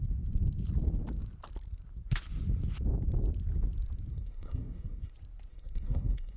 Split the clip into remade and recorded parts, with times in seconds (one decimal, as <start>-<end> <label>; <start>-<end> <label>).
0.0-4.1 recorded; 4.1-5.1 remade; 5.1-5.5 recorded; 5.5-6.4 remade